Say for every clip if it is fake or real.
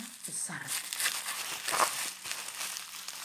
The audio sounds real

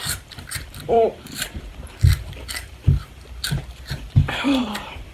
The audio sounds fake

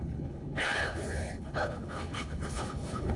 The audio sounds fake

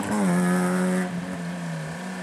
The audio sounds real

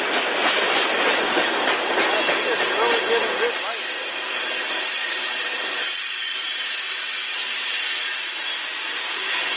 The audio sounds real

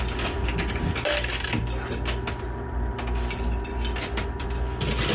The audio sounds real